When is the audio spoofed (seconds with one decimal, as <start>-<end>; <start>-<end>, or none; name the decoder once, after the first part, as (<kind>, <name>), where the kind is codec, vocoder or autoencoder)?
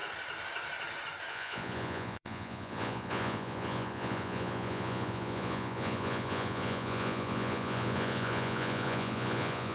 1.3-9.7 (vocoder, Vocos)